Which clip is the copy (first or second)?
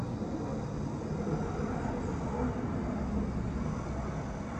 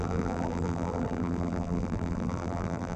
second